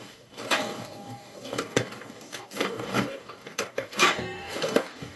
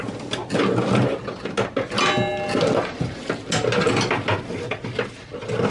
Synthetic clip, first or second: first